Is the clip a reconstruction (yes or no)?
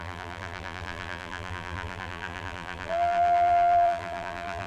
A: yes